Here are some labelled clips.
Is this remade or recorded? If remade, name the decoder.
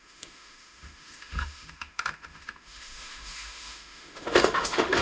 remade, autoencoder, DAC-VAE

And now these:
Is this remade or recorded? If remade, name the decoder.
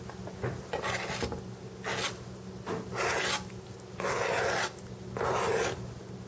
recorded